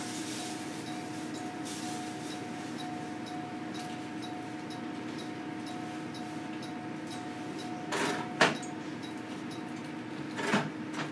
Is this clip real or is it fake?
real